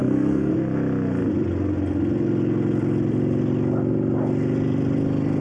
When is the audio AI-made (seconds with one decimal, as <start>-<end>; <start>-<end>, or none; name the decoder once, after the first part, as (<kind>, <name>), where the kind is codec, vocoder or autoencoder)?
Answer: 0.0-0.5 (codec, SNAC)